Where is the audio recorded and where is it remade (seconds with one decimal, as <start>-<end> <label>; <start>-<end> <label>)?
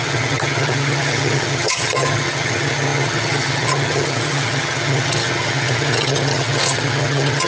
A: 0.0-7.5 remade